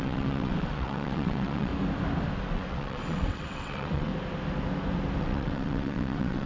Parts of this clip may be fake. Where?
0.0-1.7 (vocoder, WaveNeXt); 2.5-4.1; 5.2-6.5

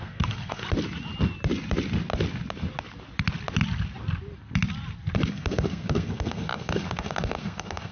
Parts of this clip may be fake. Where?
0.0-0.6 (codec, SNAC); 5.3-7.9

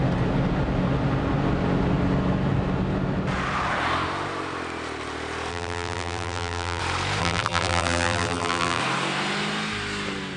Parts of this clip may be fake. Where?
5.5-6.8 (vocoder, BigVGAN v2); 7.2-8.8

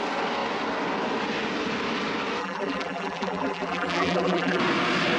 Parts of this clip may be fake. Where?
2.4-4.6 (vocoder, BigVGAN v2)

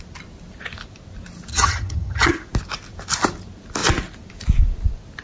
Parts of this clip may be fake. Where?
1.5-2.3 (vocoder, HiFi-GAN)

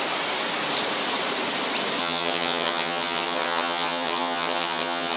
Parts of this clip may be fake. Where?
2.0-5.2 (vocoder, HiFi-GAN)